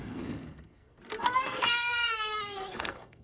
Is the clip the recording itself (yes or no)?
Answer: no